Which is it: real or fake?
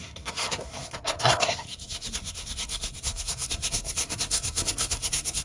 fake